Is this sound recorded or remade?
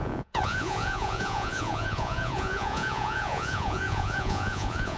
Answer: remade